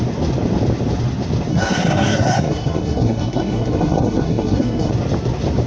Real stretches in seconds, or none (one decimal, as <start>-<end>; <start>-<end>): 0.0-1.5; 4.9-5.7